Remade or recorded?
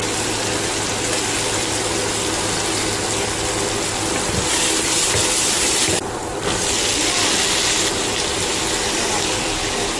recorded